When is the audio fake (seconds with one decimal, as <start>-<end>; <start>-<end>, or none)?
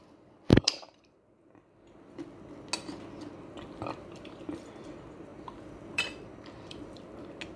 0.5-1.1; 5.3-7.0